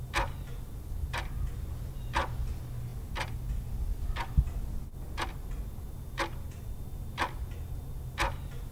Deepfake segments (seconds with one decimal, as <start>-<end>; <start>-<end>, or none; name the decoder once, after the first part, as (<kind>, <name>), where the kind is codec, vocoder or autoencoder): none